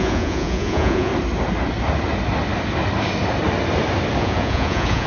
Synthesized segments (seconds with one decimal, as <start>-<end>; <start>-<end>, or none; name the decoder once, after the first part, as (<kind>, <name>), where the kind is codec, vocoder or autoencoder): 0.0-1.1 (vocoder, Vocos); 4.2-5.1